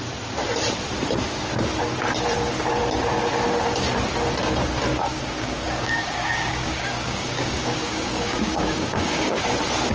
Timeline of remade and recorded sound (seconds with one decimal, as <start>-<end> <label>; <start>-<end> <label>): 0.0-4.9 recorded; 4.9-9.4 remade; 9.4-9.9 recorded